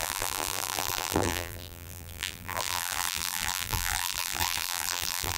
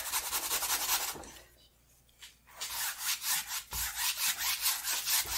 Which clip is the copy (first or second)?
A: first